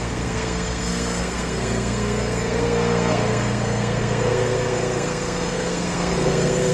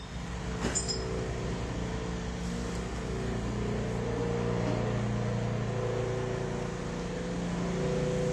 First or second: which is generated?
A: first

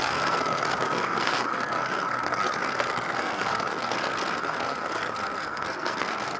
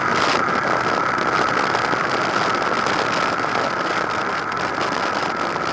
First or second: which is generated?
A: first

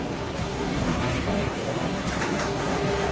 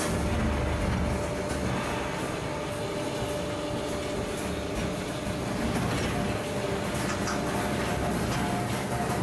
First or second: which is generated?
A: first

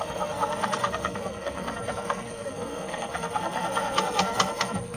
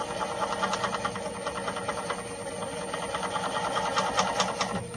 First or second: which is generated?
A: first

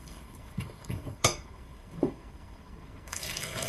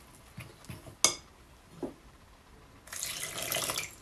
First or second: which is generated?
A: first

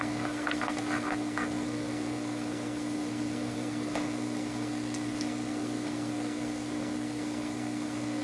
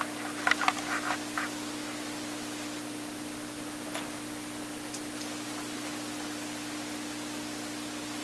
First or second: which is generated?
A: first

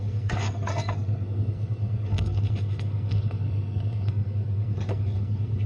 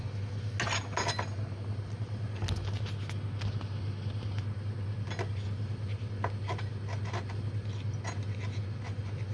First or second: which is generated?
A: first